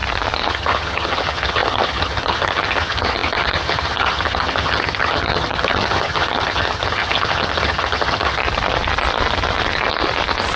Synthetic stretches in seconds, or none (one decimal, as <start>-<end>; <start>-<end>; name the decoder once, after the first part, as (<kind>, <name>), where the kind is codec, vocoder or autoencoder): 0.5-8.4 (vocoder, HiFi-GAN)